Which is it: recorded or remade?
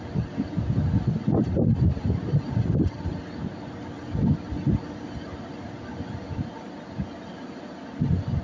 recorded